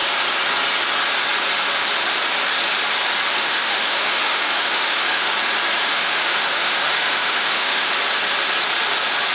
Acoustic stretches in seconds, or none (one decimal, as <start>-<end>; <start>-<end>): 0.0-3.3; 5.3-5.8; 7.9-9.3